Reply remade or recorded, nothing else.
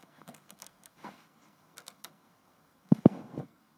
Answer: remade